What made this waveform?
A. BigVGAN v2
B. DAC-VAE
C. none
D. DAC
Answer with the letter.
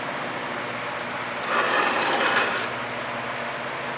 C